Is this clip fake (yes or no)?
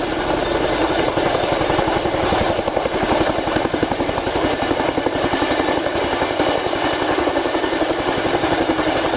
yes